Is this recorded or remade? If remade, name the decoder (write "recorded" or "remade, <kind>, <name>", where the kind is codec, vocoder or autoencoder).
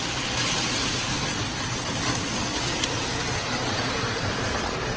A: recorded